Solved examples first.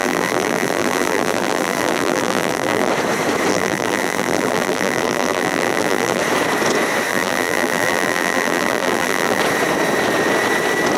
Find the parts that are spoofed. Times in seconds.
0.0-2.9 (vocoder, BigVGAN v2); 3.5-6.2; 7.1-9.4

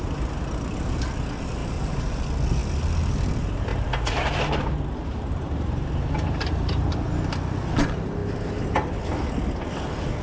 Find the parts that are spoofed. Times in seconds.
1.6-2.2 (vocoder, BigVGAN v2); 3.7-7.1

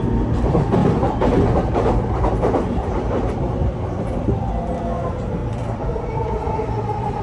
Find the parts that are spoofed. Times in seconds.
0.8-4.5 (vocoder, BigVGAN v2); 5.4-7.2

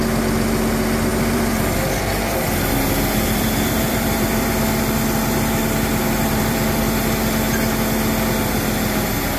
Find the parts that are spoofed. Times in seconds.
1.1-4.5 (vocoder, BigVGAN v2); 5.6-7.0